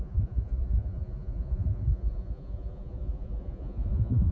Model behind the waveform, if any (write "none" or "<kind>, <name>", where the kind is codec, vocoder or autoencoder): vocoder, Vocos